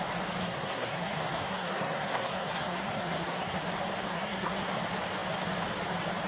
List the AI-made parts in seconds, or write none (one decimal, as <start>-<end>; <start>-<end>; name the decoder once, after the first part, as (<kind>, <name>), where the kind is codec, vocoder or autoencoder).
0.4-3.6 (codec, SNAC); 4.1-4.7

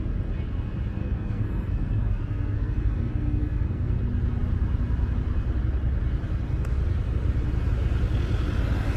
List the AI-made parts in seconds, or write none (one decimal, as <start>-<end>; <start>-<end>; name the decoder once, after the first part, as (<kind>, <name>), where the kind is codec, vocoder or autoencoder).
1.0-4.0 (codec, SNAC)

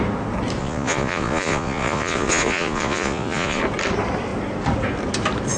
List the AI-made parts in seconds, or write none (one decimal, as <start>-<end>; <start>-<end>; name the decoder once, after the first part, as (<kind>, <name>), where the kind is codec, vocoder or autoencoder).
0.6-3.6 (vocoder, Vocos)

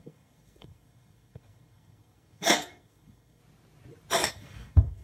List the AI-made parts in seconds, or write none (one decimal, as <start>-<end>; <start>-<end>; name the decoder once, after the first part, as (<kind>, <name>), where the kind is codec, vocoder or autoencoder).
0.0-3.4 (codec, SNAC); 4.3-5.0

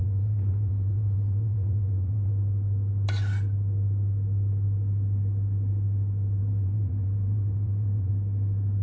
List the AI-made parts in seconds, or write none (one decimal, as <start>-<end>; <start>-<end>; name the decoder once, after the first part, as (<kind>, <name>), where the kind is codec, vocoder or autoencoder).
0.0-2.3 (vocoder, Vocos); 6.4-8.1

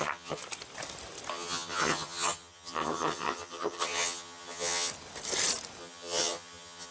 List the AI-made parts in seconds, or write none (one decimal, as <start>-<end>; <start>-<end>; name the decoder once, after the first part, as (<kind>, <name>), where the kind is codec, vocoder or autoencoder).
0.0-0.4 (vocoder, HiFi-GAN); 1.3-4.9; 5.8-6.9